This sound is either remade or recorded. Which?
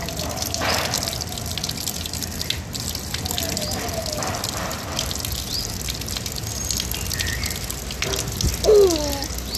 recorded